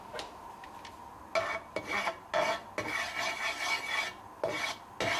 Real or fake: real